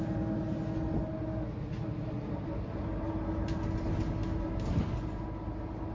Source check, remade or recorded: recorded